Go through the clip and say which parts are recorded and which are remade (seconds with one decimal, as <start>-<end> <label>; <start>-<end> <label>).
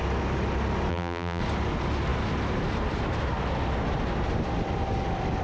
0.0-0.9 recorded; 0.9-1.4 remade; 1.4-5.4 recorded